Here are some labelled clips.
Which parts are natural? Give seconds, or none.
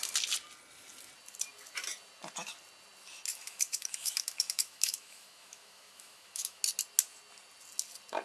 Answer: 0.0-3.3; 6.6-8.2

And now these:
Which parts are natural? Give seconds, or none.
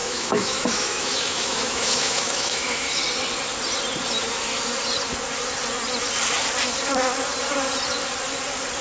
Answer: 3.0-8.8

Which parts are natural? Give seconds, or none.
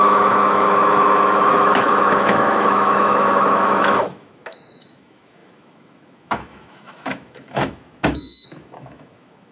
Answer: none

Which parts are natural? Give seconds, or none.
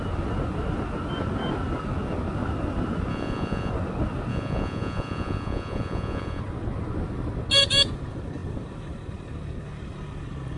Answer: 0.0-3.1; 3.7-4.3; 6.4-10.6